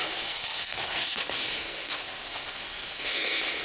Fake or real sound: fake